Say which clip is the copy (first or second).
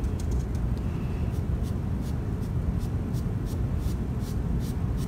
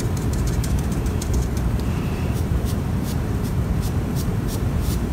second